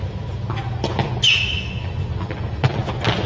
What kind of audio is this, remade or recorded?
recorded